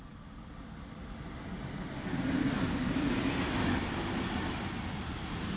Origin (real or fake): real